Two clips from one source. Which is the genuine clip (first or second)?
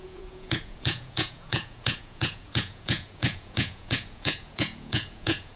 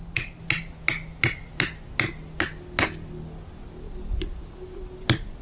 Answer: second